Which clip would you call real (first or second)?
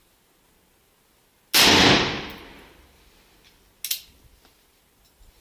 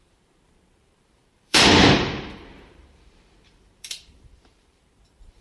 first